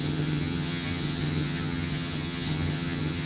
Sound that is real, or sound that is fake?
fake